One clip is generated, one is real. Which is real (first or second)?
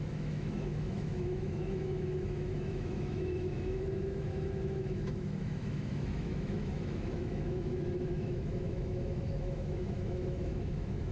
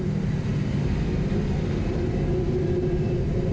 second